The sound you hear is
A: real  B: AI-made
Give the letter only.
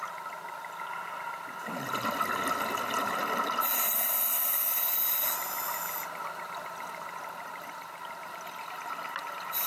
A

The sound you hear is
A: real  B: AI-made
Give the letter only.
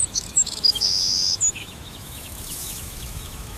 B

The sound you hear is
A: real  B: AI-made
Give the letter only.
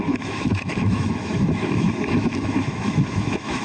B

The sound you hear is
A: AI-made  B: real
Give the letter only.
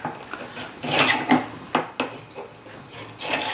B